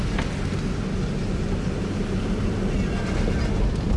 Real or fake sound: real